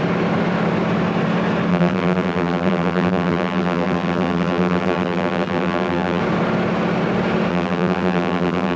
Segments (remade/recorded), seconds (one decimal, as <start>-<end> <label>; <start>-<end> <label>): 0.0-1.7 recorded; 1.7-6.2 remade; 6.2-7.5 recorded; 7.5-8.8 remade